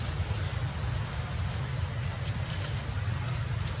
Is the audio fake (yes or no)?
no